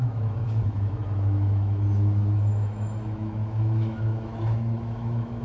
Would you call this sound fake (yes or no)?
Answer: yes